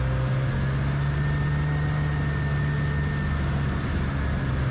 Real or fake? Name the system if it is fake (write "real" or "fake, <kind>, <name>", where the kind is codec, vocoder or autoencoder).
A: real